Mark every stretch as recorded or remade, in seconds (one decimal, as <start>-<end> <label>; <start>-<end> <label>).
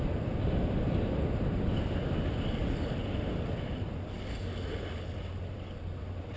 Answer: 0.0-6.4 recorded